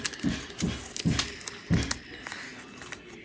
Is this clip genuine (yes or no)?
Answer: yes